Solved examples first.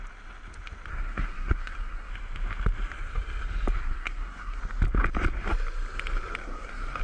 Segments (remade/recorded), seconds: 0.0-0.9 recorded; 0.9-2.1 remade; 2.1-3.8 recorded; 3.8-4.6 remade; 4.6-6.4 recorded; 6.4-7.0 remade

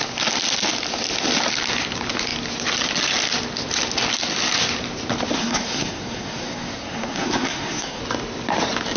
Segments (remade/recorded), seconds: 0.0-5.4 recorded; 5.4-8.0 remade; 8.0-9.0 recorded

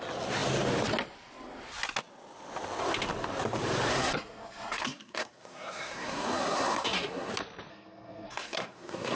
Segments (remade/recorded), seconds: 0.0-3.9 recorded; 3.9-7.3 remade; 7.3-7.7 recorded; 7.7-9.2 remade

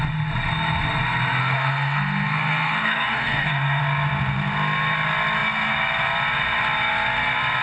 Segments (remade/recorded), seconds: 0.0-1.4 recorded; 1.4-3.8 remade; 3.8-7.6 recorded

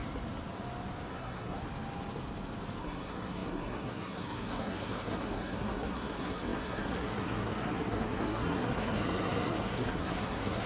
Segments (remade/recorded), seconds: 0.0-1.1 recorded; 1.1-1.6 remade; 1.6-2.8 recorded; 2.8-10.7 remade

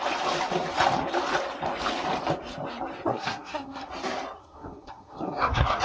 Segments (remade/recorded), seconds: 0.0-3.1 recorded; 3.1-3.9 remade; 3.9-4.4 recorded; 4.4-5.8 remade